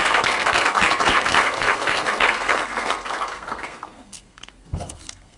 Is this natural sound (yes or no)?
no